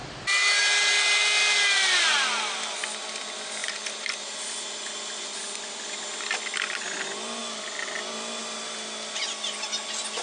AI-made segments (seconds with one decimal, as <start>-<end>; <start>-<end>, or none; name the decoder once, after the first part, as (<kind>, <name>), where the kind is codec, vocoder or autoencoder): 3.6-6.0 (vocoder, BigVGAN v2); 7.4-8.4